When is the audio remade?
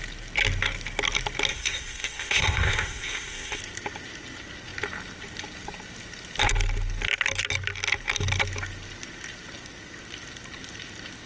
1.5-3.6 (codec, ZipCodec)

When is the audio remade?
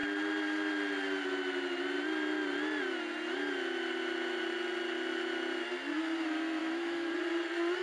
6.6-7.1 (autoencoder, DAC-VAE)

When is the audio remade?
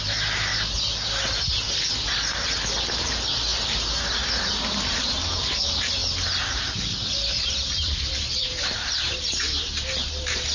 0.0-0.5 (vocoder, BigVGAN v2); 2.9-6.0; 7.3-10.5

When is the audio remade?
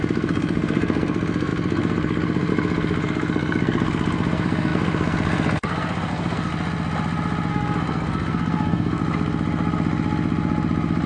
0.0-6.5 (codec, SNAC); 7.5-9.0